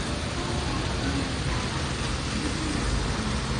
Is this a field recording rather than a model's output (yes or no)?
yes